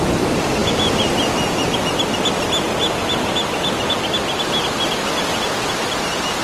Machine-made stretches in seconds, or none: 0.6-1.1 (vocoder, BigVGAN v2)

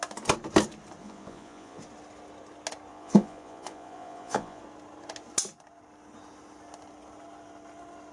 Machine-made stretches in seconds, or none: 1.0-1.8 (vocoder, Vocos); 2.9-4.6